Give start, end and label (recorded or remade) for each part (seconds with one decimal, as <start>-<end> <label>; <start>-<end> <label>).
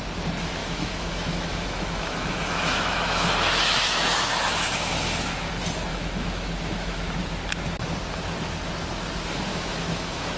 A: 0.0-0.6 recorded; 0.6-5.5 remade; 5.5-5.9 recorded; 5.9-7.2 remade; 7.2-9.5 recorded; 9.5-10.4 remade